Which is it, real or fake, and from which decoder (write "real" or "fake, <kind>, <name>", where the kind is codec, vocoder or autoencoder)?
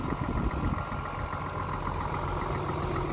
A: real